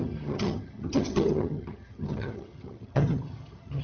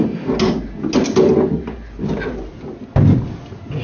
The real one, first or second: second